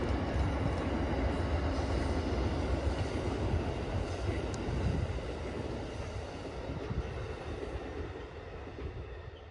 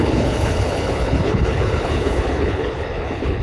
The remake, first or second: second